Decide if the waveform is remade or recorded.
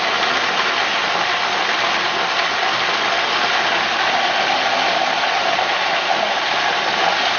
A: recorded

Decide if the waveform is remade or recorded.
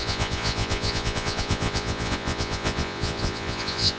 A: remade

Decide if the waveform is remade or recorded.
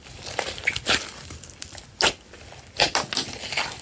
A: recorded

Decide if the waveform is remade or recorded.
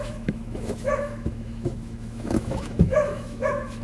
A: remade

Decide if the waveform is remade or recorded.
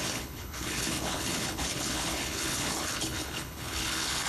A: remade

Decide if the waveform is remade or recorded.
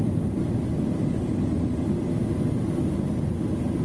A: recorded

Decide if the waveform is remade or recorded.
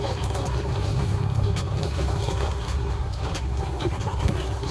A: remade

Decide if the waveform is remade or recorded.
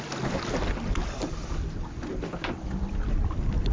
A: recorded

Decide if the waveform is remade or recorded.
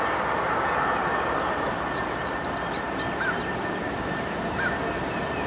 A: recorded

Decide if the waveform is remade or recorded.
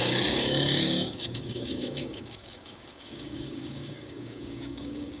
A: remade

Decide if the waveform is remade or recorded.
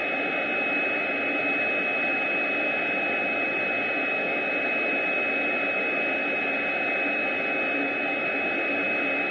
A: recorded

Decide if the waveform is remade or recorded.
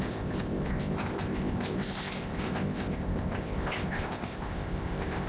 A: remade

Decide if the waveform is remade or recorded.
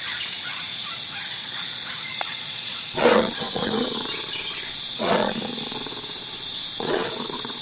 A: remade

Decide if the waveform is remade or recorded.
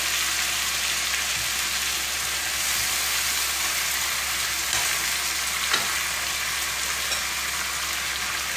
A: recorded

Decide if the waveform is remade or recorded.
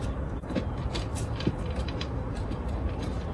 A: remade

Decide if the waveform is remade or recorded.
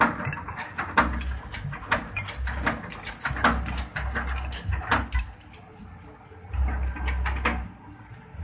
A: recorded